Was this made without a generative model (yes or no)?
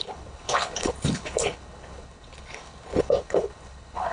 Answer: no